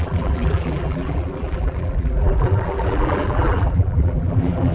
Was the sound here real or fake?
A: fake